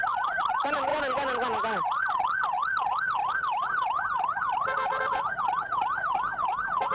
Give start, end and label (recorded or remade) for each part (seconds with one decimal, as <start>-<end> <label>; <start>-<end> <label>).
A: 0.0-6.9 recorded